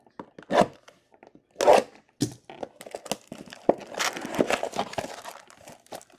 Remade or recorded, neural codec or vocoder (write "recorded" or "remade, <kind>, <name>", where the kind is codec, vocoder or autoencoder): recorded